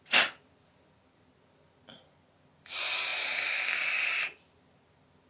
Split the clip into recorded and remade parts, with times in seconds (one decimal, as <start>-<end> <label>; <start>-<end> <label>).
0.0-5.3 recorded